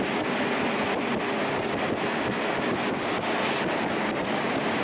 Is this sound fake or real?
real